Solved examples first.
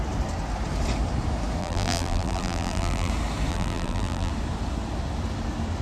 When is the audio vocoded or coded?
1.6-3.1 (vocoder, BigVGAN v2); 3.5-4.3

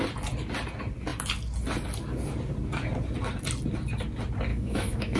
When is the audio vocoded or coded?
4.5-5.2 (autoencoder, DAC-VAE)

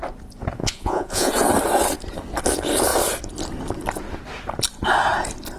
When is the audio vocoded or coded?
0.6-1.3 (vocoder, Vocos)

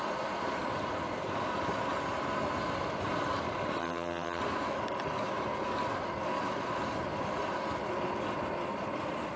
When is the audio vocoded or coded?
3.8-4.4 (vocoder, HiFi-GAN)

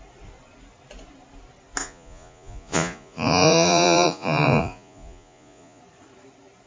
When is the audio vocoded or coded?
1.8-5.8 (vocoder, Vocos)

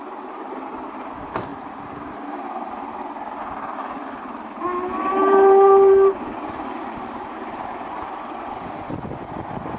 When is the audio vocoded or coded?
5.2-8.5 (vocoder, BigVGAN v2)